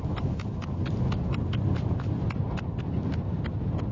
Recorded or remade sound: recorded